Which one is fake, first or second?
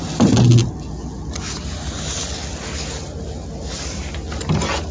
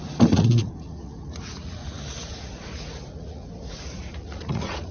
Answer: second